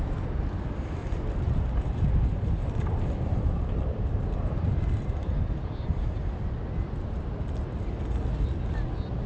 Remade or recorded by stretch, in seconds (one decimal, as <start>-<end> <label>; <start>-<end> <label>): 0.0-1.0 recorded; 1.0-4.7 remade; 4.7-9.3 recorded